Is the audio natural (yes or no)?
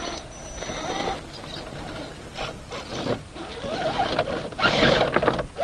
no